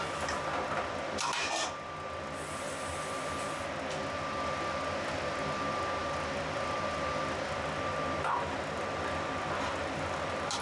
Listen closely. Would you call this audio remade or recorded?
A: recorded